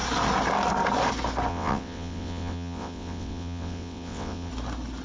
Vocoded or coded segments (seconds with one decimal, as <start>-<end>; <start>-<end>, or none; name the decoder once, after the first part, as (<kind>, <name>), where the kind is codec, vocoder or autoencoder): 1.5-4.5 (vocoder, WaveNeXt)